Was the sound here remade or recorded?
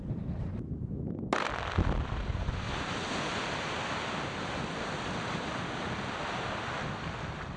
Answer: recorded